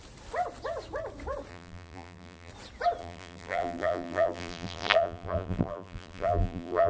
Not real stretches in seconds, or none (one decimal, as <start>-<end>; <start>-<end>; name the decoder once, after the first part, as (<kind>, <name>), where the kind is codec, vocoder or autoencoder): 1.5-2.5 (vocoder, BigVGAN v2); 3.0-6.9